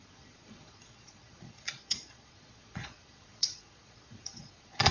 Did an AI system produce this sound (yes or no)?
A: yes